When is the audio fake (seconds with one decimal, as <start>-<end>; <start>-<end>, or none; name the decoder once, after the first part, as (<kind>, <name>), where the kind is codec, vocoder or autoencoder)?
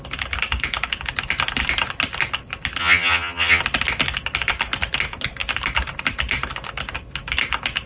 2.8-3.6 (vocoder, HiFi-GAN)